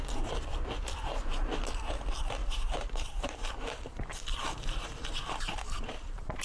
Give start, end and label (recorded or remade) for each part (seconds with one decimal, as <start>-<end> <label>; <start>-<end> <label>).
0.0-0.5 recorded; 0.5-1.6 remade; 1.6-2.4 recorded; 2.4-6.4 remade